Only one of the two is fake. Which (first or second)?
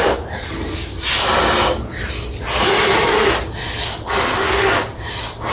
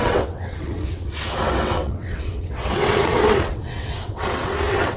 second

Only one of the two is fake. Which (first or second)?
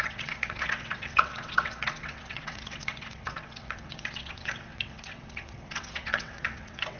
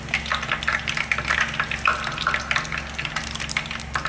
first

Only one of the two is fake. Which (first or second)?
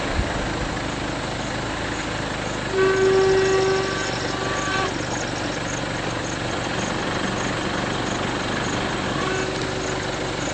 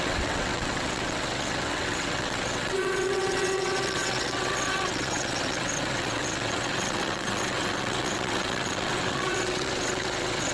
second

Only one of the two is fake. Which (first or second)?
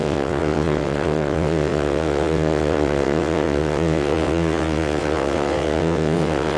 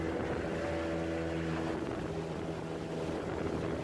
first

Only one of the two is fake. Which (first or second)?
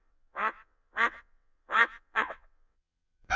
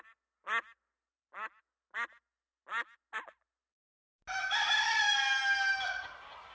first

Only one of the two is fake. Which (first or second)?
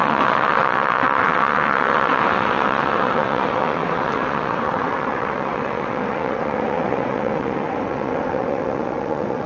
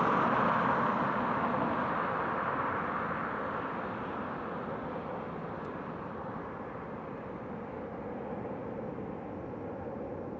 first